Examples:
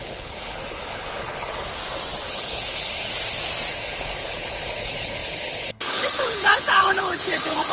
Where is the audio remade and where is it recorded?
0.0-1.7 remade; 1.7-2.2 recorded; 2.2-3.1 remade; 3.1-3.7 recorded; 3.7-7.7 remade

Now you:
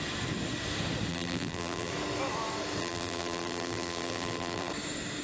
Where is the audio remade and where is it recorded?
0.0-1.1 recorded; 1.1-1.9 remade; 1.9-2.8 recorded; 2.8-4.7 remade; 4.7-5.2 recorded

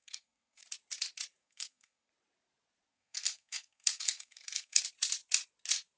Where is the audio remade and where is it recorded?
0.0-0.6 remade; 0.6-1.4 recorded; 1.4-2.1 remade; 2.1-2.9 recorded; 2.9-4.8 remade; 4.8-6.0 recorded

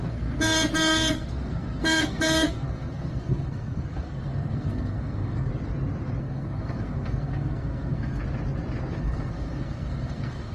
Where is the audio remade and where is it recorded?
0.0-5.5 remade; 5.5-6.2 recorded; 6.2-8.2 remade; 8.2-9.0 recorded; 9.0-10.5 remade

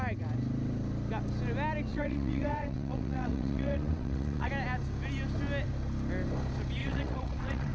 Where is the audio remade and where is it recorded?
0.0-1.9 recorded; 1.9-4.5 remade; 4.5-6.8 recorded; 6.8-7.7 remade

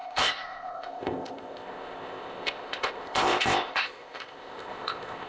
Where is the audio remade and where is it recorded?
0.0-5.3 remade